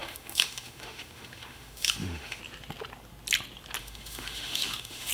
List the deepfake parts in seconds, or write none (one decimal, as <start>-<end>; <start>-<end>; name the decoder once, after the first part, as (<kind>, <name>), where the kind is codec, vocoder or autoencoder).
0.0-2.4 (autoencoder, DAC-VAE); 3.8-5.1